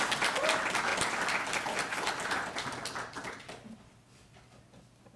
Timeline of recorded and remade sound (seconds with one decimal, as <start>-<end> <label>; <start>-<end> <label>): 0.0-5.2 recorded